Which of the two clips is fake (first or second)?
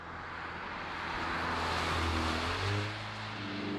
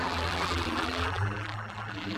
second